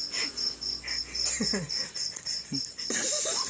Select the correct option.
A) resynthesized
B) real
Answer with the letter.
B